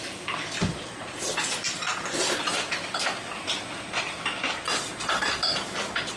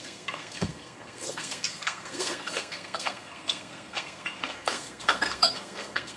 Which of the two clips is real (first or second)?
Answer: first